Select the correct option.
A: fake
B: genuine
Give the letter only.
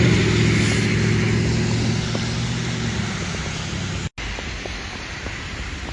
B